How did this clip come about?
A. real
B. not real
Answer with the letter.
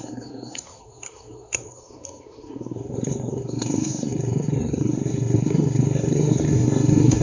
B